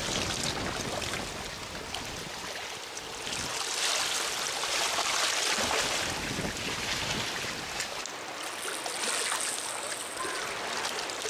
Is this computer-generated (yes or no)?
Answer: no